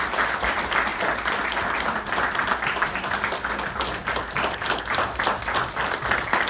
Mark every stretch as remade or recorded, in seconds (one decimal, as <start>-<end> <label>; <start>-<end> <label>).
0.0-0.9 recorded; 0.9-1.4 remade; 1.4-6.5 recorded